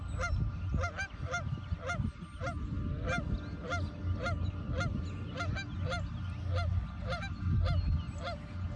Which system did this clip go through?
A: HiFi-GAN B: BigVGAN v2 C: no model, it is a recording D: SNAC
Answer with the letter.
C